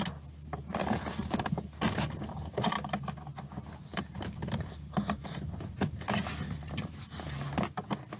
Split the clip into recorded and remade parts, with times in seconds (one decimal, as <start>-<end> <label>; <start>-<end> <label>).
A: 0.0-3.9 recorded; 3.9-6.7 remade; 6.7-8.2 recorded